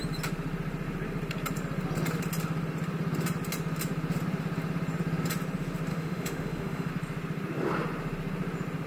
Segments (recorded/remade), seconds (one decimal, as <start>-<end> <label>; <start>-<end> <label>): 0.0-5.9 recorded; 5.9-6.9 remade; 6.9-8.9 recorded